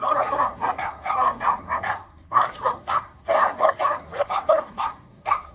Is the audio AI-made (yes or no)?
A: yes